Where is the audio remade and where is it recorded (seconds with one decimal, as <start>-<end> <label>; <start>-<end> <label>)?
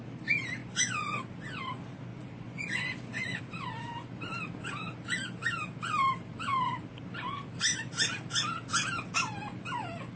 0.0-0.6 recorded; 0.6-1.2 remade; 1.2-2.1 recorded; 2.1-3.4 remade; 3.4-10.2 recorded